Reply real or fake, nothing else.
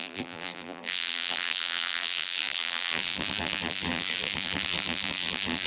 fake